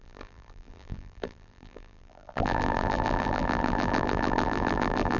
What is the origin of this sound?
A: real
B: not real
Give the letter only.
B